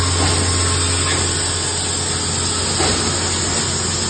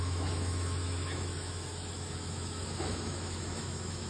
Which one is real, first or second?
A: first